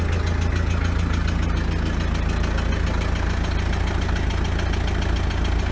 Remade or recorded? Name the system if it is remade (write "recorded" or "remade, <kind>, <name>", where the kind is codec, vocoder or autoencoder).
recorded